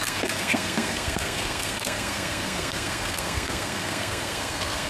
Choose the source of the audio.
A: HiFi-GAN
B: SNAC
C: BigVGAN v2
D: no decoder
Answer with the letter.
B